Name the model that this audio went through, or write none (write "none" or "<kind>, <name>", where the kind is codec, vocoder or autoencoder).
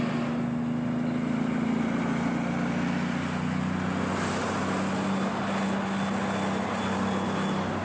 none